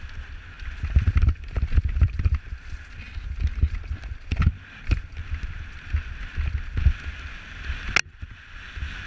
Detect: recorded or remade recorded